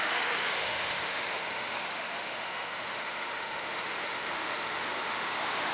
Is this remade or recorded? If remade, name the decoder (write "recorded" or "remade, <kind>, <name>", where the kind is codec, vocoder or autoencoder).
remade, autoencoder, DAC-VAE